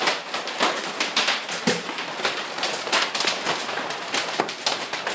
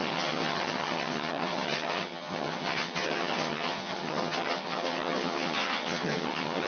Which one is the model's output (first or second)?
second